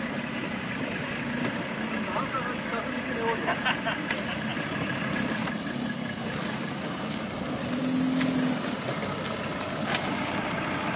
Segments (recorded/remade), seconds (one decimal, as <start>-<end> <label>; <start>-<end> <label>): 0.0-11.0 recorded